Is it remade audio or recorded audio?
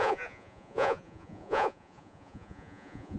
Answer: remade